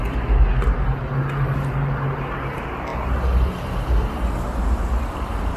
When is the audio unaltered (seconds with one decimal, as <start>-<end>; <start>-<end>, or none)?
0.0-5.6